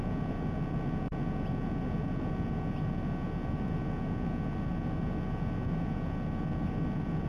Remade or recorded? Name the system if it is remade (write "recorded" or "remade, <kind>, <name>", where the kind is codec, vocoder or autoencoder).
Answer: recorded